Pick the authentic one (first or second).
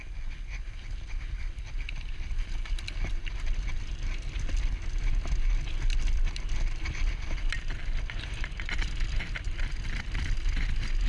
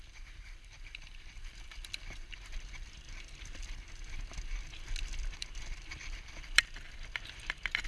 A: first